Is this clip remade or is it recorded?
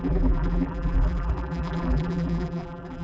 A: remade